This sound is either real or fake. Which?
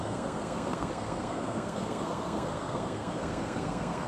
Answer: fake